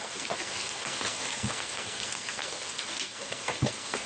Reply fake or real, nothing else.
fake